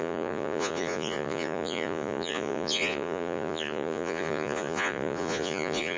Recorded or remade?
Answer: remade